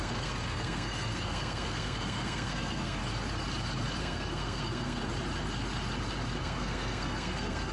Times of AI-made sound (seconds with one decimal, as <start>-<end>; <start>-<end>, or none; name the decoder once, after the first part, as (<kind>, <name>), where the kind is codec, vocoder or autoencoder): 0.0-3.0 (codec, SNAC); 4.0-5.0; 6.4-7.7